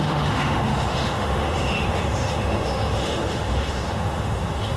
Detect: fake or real fake